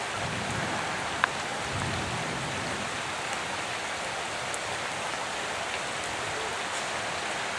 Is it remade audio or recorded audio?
recorded